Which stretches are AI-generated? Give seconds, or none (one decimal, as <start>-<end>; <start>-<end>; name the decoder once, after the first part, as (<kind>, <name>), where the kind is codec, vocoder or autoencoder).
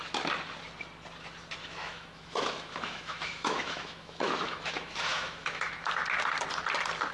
1.6-5.9 (autoencoder, DAC-VAE)